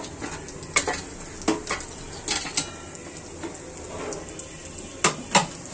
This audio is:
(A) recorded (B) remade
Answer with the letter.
A